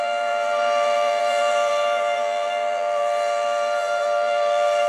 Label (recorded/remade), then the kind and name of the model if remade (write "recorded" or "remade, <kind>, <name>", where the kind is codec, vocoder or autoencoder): remade, vocoder, BigVGAN v2